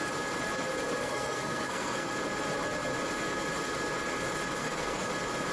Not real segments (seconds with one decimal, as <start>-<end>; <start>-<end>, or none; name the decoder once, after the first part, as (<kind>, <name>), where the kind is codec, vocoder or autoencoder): 1.0-2.1 (codec, SNAC); 4.6-5.1